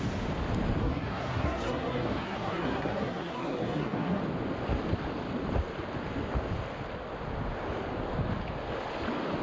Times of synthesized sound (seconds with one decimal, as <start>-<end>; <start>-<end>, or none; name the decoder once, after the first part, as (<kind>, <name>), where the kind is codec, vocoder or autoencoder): 0.8-4.2 (codec, SNAC)

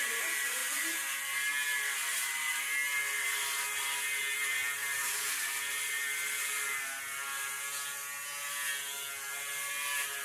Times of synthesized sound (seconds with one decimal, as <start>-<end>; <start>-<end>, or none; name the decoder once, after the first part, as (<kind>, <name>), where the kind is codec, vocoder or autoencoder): none

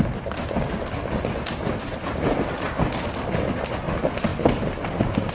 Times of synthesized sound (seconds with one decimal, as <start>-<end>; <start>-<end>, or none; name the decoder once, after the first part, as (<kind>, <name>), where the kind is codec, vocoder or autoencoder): none